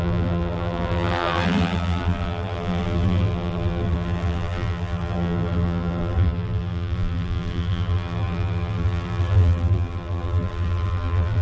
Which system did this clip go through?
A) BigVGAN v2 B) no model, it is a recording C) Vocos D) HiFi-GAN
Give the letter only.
A